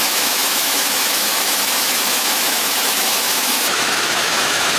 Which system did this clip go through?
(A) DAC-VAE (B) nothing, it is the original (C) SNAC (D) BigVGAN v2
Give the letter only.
A